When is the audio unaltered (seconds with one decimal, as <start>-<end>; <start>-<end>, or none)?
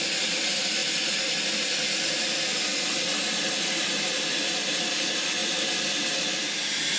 0.0-7.0